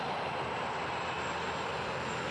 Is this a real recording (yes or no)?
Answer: yes